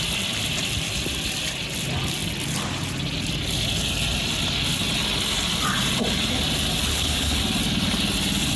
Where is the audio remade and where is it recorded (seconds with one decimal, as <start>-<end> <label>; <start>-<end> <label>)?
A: 0.0-6.9 recorded; 6.9-7.4 remade; 7.4-8.6 recorded